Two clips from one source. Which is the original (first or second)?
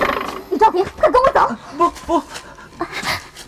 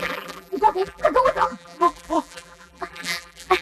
first